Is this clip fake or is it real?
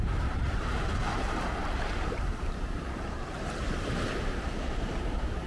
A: fake